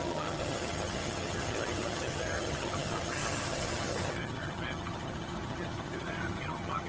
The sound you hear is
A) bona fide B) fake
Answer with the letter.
B